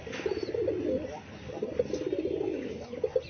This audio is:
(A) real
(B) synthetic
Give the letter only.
A